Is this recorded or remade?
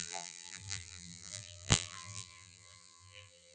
remade